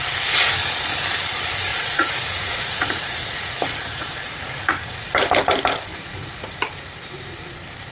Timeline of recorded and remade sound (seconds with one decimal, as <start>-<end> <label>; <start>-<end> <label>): 0.0-1.7 recorded; 1.7-5.1 remade; 5.1-5.9 recorded; 5.9-6.6 remade; 6.6-7.9 recorded